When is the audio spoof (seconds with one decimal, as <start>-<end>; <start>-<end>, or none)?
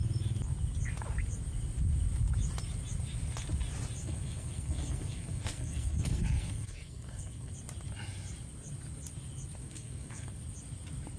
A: 4.0-7.5; 9.6-10.4